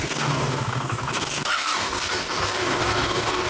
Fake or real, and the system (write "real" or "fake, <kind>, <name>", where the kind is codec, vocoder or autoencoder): fake, codec, DAC